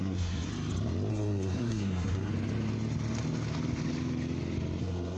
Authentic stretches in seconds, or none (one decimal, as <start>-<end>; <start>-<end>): 0.5-1.1; 2.3-4.8

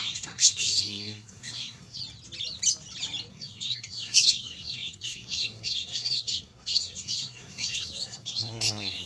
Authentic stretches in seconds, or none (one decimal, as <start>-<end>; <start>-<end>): 2.0-3.3

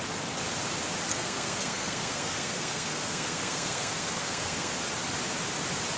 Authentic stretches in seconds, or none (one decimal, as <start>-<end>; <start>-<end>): 0.0-1.1; 4.7-6.0

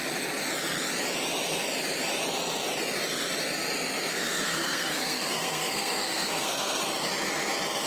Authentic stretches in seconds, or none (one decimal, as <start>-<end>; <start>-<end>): 0.0-4.1; 6.8-7.9